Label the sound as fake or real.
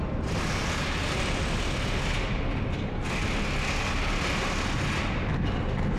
real